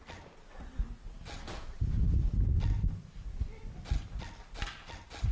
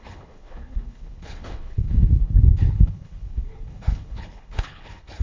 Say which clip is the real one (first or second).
first